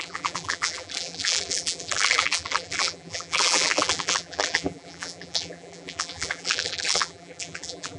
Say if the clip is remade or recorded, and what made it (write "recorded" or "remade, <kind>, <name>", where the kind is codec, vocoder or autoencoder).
remade, vocoder, BigVGAN v2